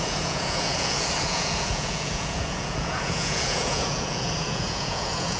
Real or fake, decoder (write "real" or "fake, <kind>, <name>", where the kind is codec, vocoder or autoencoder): fake, vocoder, Vocos